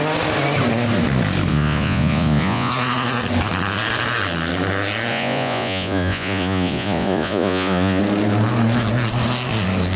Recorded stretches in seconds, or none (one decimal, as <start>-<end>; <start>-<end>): 0.0-1.5; 2.7-5.1; 8.0-10.0